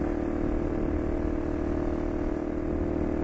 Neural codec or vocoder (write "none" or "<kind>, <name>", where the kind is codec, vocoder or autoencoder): none